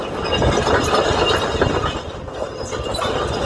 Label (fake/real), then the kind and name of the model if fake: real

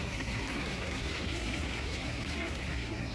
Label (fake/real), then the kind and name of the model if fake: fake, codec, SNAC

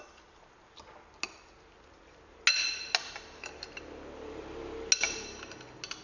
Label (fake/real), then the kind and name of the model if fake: real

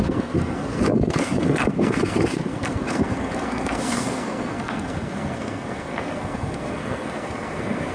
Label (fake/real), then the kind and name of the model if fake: fake, codec, SNAC